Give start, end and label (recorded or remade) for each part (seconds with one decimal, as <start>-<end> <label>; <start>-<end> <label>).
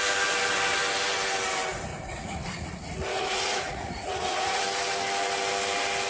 0.0-1.9 recorded; 1.9-4.6 remade; 4.6-6.1 recorded